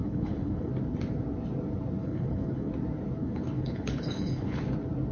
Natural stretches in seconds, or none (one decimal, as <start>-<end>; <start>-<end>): 0.7-2.0; 2.7-3.2; 4.6-5.1